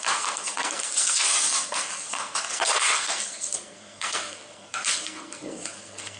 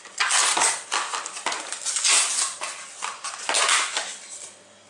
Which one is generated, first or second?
first